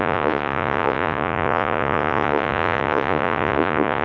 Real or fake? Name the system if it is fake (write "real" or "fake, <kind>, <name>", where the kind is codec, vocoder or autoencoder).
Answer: fake, vocoder, Vocos